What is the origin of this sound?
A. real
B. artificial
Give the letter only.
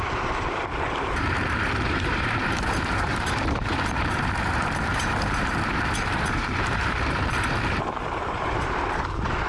B